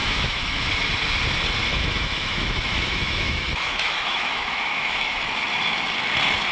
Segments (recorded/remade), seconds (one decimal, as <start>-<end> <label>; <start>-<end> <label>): 0.0-0.6 remade; 0.6-1.7 recorded; 1.7-5.2 remade; 5.2-6.5 recorded